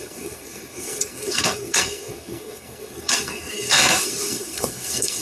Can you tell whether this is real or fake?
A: fake